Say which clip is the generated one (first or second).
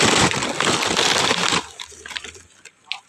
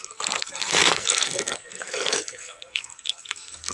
second